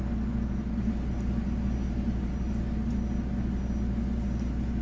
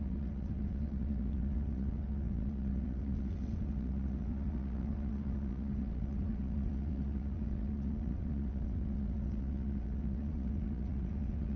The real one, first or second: first